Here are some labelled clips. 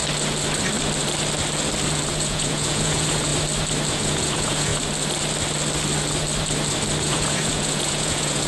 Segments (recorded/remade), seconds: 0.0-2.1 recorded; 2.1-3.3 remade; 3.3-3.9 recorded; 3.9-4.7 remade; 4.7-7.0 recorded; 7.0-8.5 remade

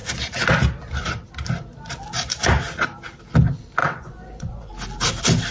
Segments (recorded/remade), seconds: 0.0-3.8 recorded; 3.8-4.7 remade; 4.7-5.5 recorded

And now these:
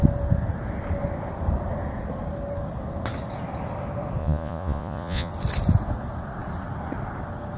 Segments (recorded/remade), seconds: 0.0-4.2 recorded; 4.2-5.3 remade; 5.3-7.6 recorded

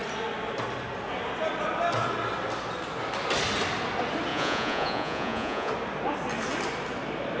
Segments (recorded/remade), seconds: 0.0-4.3 recorded; 4.3-5.7 remade; 5.7-7.4 recorded

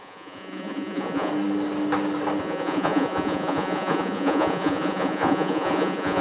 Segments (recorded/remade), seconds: 0.0-1.3 remade; 1.3-2.4 recorded; 2.4-6.2 remade

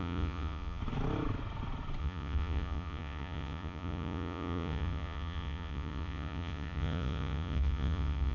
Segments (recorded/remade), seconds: 0.0-0.8 remade; 0.8-2.0 recorded; 2.0-8.3 remade

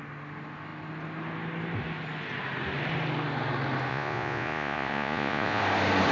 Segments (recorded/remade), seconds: 0.0-3.9 recorded; 3.9-5.6 remade; 5.6-6.1 recorded